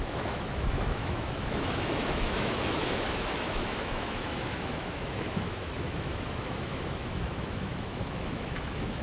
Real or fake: fake